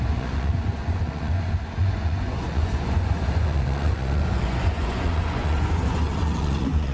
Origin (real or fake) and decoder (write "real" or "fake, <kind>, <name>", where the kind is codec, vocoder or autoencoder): fake, vocoder, Vocos